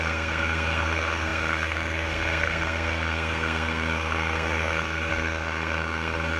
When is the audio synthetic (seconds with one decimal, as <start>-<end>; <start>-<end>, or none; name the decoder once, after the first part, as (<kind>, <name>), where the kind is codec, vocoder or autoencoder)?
0.0-6.4 (codec, SNAC)